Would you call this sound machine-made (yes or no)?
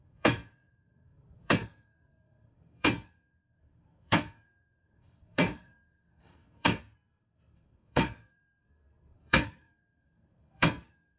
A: yes